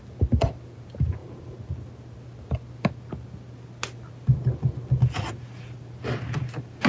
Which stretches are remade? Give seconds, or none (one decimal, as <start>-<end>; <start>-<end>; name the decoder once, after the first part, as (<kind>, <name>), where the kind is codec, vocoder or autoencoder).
none